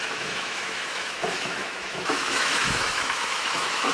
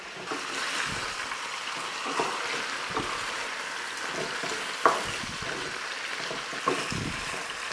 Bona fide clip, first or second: second